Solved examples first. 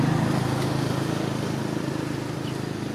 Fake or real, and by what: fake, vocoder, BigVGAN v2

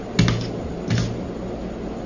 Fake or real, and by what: real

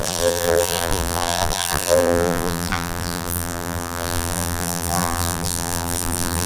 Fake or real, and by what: fake, vocoder, BigVGAN v2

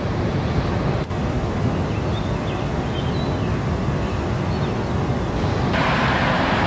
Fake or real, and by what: real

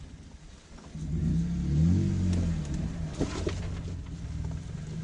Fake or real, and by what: real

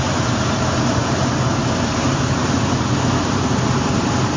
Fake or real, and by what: fake, vocoder, BigVGAN v2